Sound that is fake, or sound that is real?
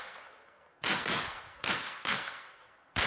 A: fake